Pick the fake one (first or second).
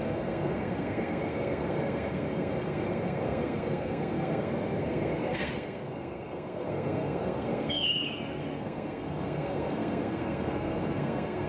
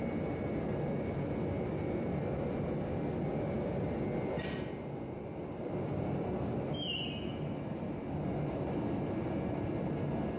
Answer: first